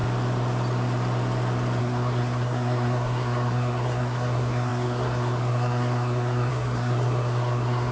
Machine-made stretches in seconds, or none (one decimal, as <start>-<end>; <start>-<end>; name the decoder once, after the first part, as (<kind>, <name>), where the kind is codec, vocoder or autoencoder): 1.8-7.9 (codec, SNAC)